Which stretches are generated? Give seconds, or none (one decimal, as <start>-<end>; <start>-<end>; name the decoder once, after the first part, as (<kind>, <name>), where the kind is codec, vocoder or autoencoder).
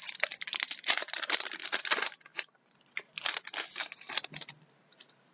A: 0.0-1.6 (vocoder, BigVGAN v2); 4.8-5.3